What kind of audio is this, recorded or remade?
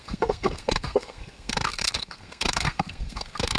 remade